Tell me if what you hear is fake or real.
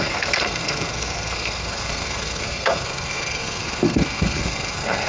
fake